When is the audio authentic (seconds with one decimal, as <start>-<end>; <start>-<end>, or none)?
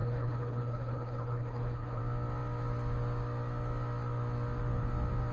2.0-5.3